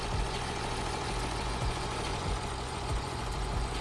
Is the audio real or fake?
fake